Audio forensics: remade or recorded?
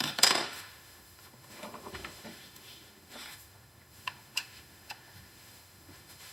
remade